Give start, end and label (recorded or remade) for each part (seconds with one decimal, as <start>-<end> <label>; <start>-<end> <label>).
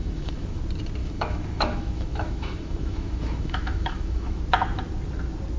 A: 0.0-0.6 remade; 0.6-1.0 recorded; 1.0-4.4 remade; 4.4-5.6 recorded